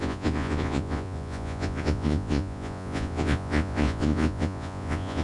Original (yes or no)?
no